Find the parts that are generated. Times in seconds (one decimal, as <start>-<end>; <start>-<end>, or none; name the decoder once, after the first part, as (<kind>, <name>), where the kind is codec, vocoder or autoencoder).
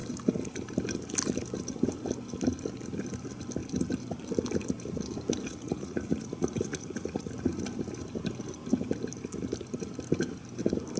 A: 5.5-7.3 (vocoder, Vocos)